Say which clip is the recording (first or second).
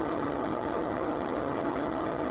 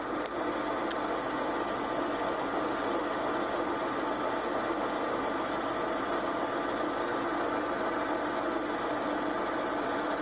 second